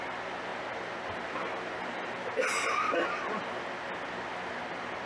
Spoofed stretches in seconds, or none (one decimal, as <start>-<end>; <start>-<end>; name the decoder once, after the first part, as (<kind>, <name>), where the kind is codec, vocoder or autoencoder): none